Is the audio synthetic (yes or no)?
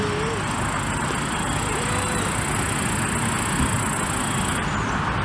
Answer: no